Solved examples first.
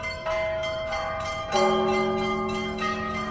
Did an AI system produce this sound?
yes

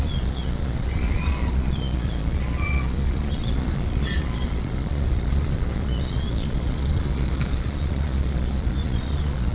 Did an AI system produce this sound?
yes